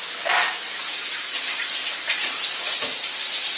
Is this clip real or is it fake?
real